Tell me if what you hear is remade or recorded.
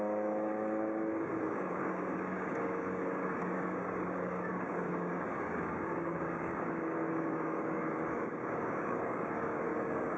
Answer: remade